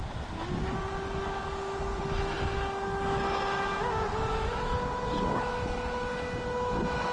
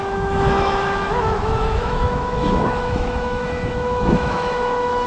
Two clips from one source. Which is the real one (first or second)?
first